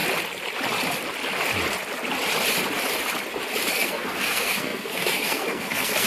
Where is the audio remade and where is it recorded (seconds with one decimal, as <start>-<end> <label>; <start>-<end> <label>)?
0.0-3.7 recorded; 3.7-6.1 remade